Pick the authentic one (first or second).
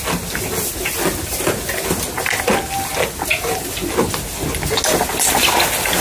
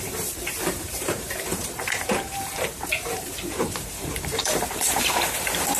first